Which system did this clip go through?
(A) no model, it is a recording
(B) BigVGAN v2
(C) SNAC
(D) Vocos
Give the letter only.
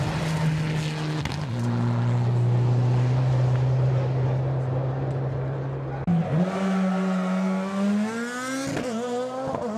A